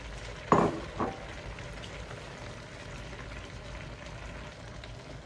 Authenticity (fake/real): real